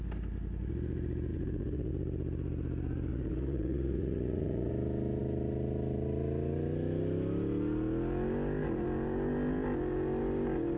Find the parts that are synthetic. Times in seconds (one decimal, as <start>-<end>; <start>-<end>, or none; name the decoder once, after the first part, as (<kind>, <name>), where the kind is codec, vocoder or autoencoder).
1.3-1.9 (vocoder, Vocos); 3.1-4.7